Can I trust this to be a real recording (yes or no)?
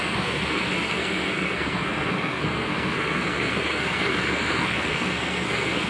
no